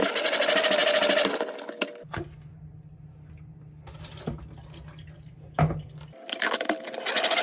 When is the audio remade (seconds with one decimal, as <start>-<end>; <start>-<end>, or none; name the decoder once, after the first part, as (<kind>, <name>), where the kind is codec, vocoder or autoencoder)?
none